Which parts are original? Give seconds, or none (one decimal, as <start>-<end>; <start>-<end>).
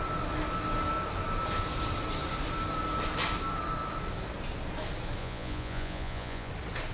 0.0-5.2; 6.5-6.9